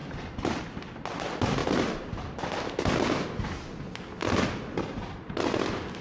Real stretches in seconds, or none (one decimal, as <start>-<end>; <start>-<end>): 0.9-1.6; 2.9-6.0